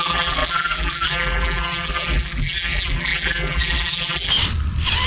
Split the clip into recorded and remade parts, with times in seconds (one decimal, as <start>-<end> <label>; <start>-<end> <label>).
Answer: 0.0-4.3 remade; 4.3-5.1 recorded